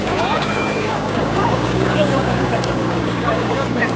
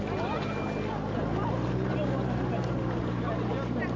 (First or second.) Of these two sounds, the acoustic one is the second